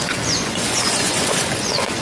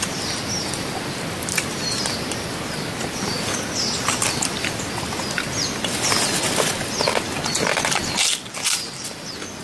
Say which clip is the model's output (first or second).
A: first